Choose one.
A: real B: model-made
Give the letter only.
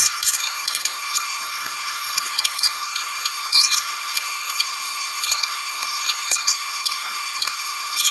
B